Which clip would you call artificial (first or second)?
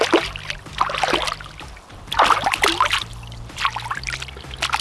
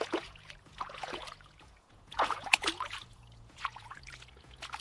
second